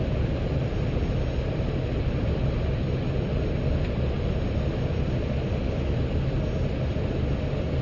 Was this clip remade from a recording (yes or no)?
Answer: no